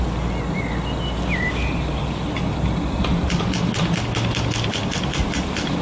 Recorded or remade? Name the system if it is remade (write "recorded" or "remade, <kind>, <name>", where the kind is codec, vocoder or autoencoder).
recorded